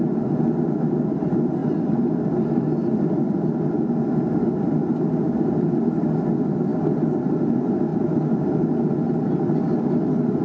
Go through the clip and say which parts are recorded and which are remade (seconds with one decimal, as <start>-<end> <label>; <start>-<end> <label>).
0.0-6.7 recorded; 6.7-7.2 remade; 7.2-10.4 recorded